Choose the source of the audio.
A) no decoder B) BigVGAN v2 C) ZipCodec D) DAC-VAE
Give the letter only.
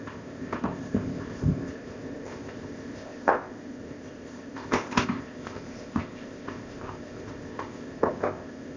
C